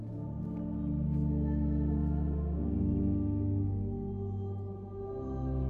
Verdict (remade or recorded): recorded